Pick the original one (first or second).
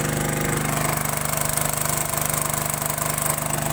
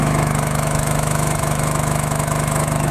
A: first